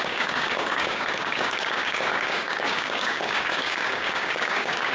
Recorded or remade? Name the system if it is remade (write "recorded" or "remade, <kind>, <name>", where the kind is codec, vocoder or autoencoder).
remade, codec, DAC